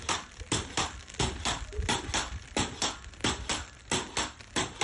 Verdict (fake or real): real